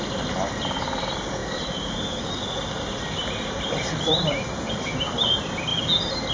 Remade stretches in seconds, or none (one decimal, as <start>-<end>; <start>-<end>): 1.4-2.4; 3.2-4.7